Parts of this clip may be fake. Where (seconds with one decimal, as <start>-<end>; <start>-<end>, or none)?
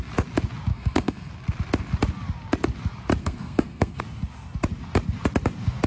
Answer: 0.7-1.3; 3.2-4.0